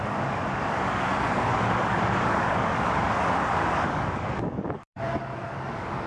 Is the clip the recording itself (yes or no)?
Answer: no